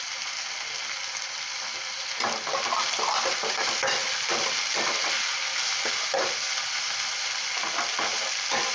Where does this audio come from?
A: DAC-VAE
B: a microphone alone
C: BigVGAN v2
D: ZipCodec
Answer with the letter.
C